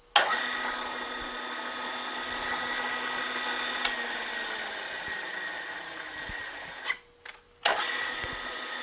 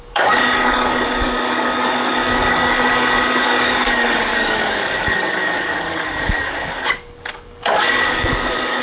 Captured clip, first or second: first